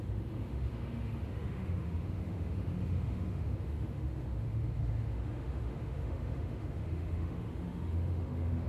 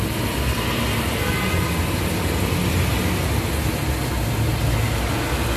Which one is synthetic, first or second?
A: first